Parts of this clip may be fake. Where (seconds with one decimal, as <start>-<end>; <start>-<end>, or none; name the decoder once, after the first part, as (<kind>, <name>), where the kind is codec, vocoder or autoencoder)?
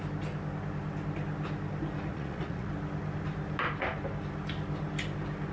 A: 2.1-2.7 (vocoder, Vocos)